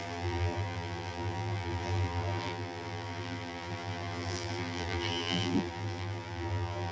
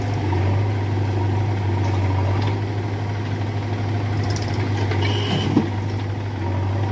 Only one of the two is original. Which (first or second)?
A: second